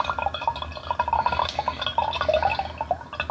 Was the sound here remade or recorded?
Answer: recorded